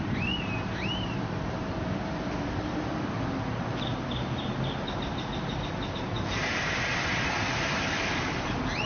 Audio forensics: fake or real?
real